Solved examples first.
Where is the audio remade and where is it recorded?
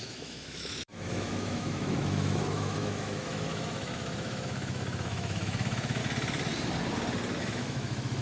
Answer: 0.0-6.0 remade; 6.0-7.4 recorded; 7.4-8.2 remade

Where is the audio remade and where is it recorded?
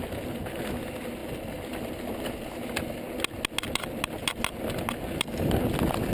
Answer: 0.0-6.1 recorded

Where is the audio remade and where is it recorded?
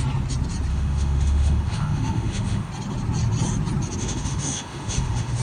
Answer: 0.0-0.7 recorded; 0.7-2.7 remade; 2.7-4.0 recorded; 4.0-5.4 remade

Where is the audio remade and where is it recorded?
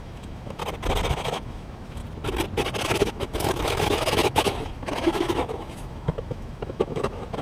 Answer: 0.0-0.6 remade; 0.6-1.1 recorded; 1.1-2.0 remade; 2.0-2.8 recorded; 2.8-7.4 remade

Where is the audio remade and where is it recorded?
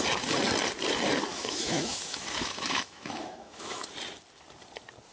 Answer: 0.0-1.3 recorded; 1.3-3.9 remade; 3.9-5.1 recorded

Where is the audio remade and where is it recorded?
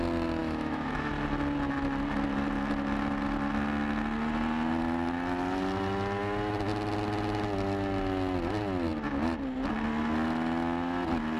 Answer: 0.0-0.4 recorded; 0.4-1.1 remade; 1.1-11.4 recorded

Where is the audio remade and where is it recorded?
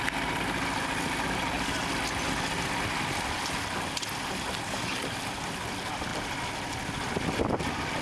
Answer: 0.0-8.0 recorded